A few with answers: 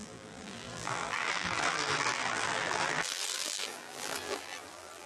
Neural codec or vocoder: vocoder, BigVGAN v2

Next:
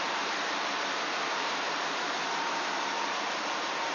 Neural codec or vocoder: vocoder, BigVGAN v2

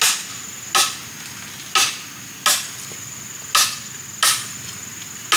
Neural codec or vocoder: none